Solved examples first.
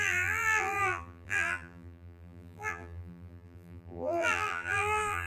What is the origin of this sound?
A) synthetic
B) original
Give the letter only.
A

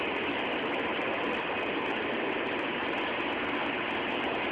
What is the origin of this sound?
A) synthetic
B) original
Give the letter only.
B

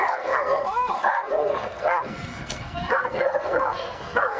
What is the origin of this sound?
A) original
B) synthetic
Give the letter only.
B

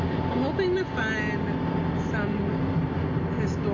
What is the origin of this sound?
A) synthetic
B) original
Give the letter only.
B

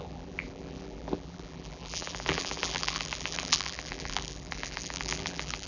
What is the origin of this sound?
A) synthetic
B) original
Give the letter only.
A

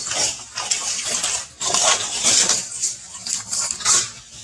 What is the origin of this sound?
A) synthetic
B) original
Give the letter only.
B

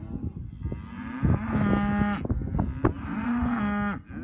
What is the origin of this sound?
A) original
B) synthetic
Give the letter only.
A